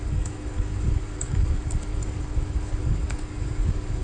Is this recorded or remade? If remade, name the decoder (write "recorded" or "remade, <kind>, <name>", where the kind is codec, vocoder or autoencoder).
remade, codec, DAC